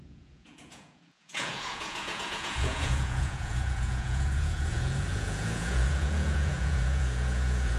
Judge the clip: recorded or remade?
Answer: remade